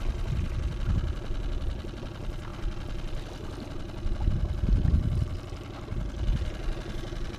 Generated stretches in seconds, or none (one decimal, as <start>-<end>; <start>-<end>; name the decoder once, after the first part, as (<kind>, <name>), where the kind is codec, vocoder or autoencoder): none